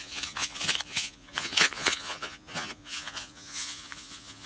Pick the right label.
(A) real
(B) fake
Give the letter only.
B